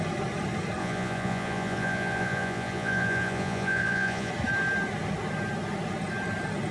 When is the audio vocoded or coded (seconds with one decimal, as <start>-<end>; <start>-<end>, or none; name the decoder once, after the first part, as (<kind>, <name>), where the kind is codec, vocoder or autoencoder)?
0.8-4.3 (vocoder, Vocos)